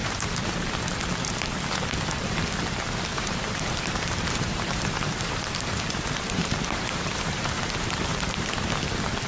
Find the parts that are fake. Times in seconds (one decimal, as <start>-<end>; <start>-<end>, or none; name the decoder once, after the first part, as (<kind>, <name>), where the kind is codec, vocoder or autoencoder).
0.0-1.0 (vocoder, BigVGAN v2); 3.1-8.1